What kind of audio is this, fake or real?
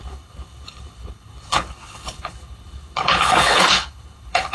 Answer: fake